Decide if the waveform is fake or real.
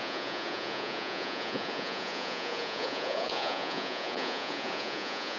fake